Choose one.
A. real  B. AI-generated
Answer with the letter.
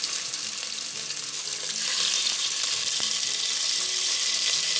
A